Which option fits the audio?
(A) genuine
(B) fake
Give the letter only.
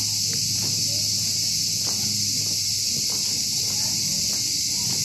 A